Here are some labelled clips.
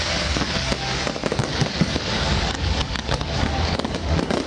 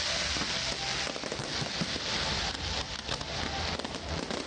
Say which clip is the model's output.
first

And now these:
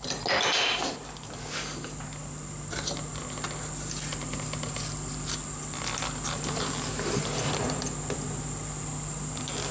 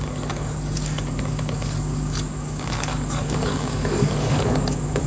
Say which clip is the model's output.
second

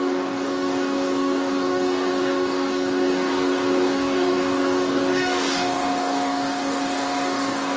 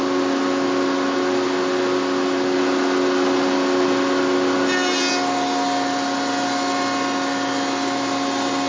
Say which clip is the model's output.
first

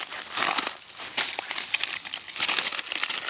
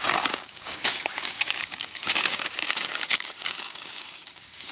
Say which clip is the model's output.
second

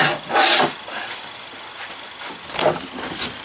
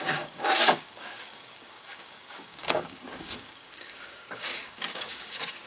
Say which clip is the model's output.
second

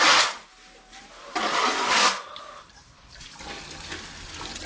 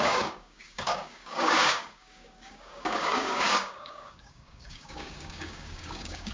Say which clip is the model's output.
second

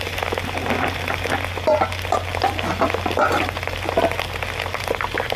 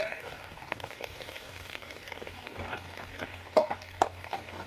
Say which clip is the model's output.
second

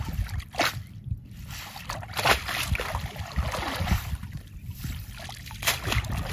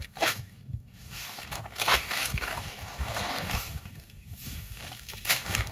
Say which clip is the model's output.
second